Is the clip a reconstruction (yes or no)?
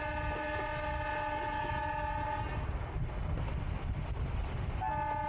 no